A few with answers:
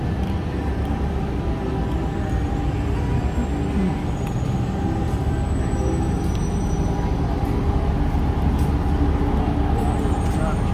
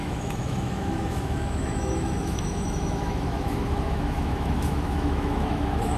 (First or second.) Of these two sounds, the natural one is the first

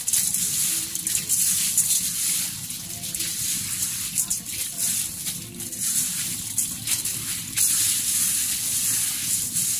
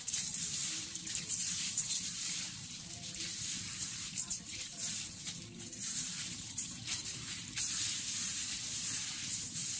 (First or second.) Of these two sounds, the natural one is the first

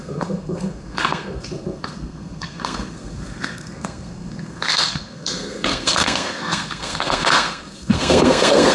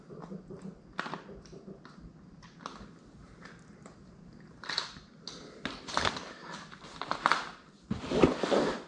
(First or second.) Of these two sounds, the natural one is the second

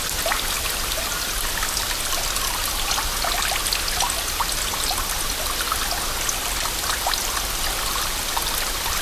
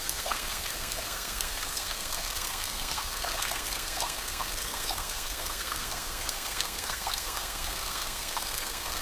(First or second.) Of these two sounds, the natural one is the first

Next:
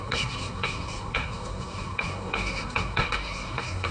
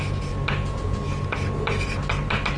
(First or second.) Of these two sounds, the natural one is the second